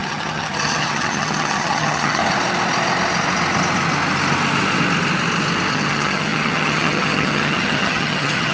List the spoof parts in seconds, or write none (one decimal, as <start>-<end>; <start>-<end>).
0.0-2.2; 5.7-8.5